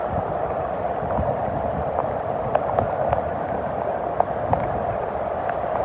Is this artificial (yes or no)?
yes